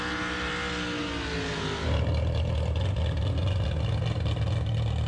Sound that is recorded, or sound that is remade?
recorded